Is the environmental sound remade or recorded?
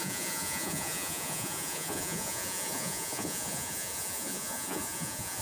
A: remade